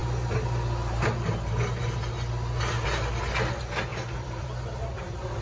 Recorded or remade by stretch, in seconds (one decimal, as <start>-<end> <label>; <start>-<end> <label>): 0.0-3.9 recorded; 3.9-5.4 remade